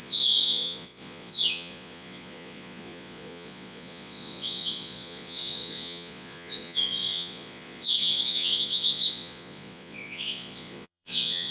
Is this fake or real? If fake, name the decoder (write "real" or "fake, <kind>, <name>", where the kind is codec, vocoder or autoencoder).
fake, vocoder, Vocos